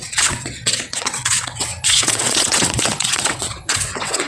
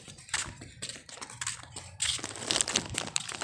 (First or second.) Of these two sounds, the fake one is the first